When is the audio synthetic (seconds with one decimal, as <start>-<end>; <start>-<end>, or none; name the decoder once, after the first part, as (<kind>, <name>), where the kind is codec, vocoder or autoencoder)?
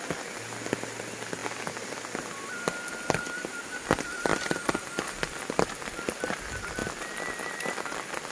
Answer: none